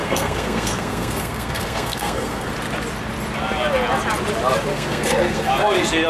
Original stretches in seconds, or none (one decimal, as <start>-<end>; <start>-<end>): 2.5-4.7; 5.5-6.1